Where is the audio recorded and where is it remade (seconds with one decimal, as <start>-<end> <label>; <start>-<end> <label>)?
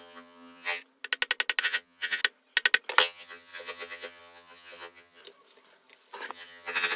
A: 0.0-0.8 remade; 0.8-1.6 recorded; 1.6-2.2 remade; 2.2-3.0 recorded; 3.0-5.2 remade; 5.2-6.3 recorded; 6.3-7.0 remade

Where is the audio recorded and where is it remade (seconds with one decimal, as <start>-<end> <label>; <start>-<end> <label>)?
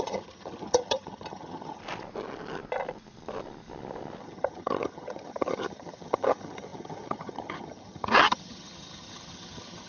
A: 0.0-1.8 remade; 1.8-4.2 recorded; 4.2-9.9 remade